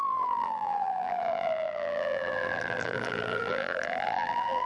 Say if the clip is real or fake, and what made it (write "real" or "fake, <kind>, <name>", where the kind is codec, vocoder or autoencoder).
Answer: fake, vocoder, BigVGAN v2